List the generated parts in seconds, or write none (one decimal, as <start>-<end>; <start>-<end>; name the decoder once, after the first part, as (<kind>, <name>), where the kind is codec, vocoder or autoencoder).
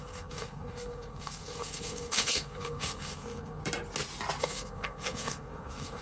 0.0-3.6 (codec, SNAC); 4.4-6.0